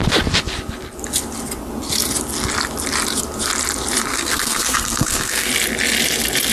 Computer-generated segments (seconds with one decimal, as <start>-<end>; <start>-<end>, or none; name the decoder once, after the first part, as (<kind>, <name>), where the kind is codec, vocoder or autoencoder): 4.1-5.5 (codec, SNAC)